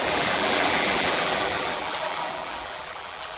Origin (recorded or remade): remade